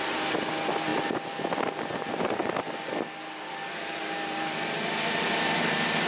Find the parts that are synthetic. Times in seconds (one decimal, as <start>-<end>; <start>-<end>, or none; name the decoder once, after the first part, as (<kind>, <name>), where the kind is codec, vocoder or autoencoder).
none